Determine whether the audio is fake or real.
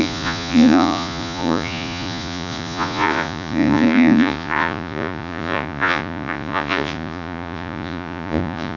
fake